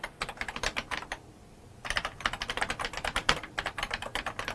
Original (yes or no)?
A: no